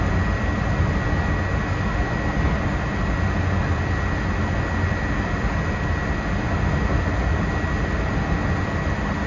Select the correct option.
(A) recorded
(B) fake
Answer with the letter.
A